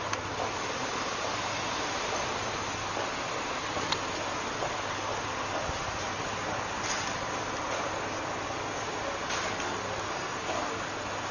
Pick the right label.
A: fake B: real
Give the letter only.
B